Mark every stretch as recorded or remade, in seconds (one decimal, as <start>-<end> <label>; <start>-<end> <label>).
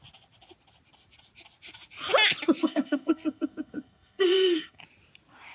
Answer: 0.0-2.6 recorded; 2.6-4.8 remade; 4.8-5.5 recorded